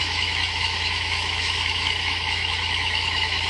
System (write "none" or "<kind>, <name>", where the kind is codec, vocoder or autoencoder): autoencoder, DAC-VAE